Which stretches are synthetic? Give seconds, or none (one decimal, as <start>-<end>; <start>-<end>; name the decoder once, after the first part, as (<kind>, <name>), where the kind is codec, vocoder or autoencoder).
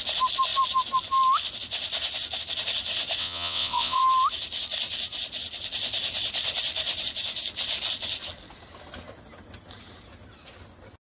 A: 3.2-4.0 (vocoder, WaveNeXt)